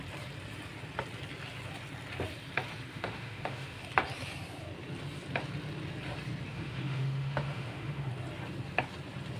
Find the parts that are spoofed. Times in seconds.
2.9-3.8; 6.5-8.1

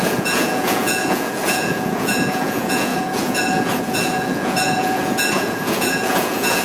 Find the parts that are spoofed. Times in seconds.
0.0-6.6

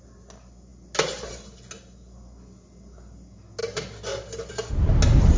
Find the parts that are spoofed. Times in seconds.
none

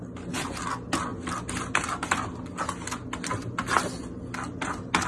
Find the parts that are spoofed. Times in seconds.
none

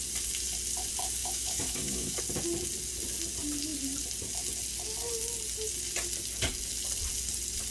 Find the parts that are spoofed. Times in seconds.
1.2-2.2

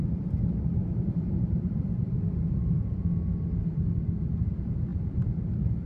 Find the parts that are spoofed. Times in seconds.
0.8-3.0; 4.9-5.4

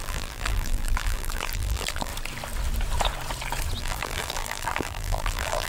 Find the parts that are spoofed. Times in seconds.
0.0-2.1; 3.8-5.7